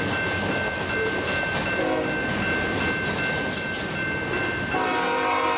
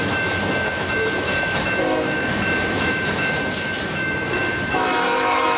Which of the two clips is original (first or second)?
first